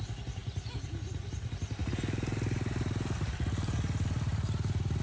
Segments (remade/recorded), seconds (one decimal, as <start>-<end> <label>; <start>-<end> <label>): 0.0-5.0 recorded